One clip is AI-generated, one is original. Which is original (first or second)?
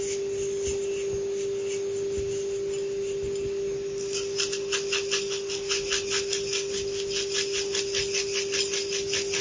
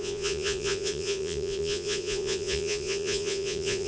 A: first